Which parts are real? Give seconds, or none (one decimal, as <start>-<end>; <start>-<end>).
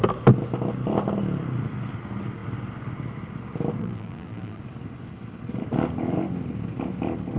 0.0-3.8; 4.6-7.4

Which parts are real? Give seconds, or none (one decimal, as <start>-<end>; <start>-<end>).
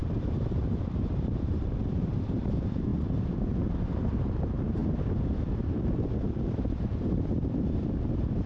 4.8-5.6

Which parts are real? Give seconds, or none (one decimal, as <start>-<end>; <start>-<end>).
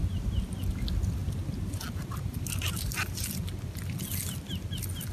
0.0-5.1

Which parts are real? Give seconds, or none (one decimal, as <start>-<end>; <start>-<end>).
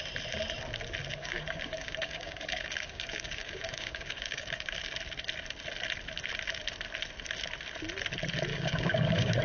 0.0-1.2; 4.8-8.5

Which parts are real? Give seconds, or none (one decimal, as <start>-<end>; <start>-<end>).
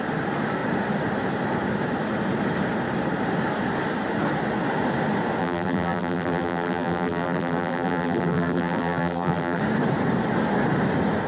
0.0-5.4; 9.6-11.3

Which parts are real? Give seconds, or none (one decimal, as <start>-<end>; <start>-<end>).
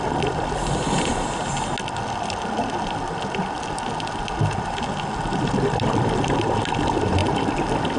0.0-8.0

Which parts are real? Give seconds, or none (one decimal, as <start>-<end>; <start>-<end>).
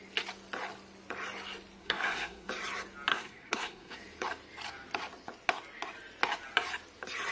0.0-1.8; 2.5-3.1; 4.0-7.3